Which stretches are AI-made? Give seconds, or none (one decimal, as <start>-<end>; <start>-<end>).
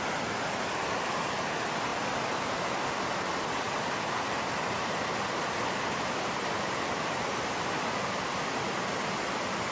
0.0-1.9; 6.2-9.7